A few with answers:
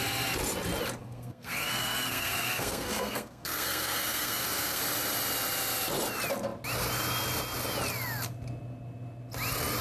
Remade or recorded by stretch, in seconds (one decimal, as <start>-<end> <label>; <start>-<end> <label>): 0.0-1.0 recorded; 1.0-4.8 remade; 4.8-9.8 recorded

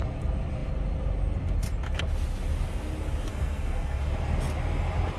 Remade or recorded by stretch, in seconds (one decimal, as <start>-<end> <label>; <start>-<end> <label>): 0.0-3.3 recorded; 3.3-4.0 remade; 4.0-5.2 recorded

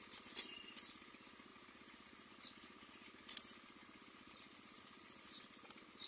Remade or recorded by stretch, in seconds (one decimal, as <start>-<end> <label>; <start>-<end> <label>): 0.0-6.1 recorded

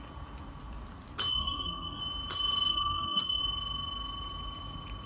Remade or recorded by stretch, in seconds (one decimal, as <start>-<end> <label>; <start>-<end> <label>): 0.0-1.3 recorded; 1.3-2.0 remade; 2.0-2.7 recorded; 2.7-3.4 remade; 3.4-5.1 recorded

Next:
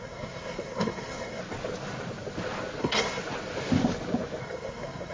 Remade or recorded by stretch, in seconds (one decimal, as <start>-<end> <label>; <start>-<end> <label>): 0.0-1.4 remade; 1.4-2.8 recorded; 2.8-3.2 remade; 3.2-4.4 recorded; 4.4-5.1 remade

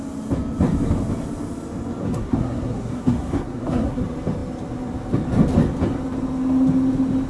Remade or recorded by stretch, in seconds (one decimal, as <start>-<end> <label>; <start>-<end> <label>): 0.0-2.0 recorded; 2.0-4.0 remade; 4.0-7.3 recorded